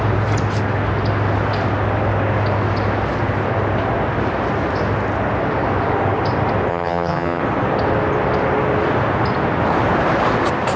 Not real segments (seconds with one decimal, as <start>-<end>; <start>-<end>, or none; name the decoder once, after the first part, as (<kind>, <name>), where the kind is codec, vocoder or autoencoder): 6.7-7.4 (vocoder, HiFi-GAN)